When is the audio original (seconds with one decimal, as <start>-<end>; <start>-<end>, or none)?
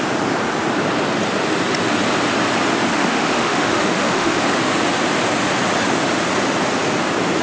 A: 0.0-2.9; 4.4-7.4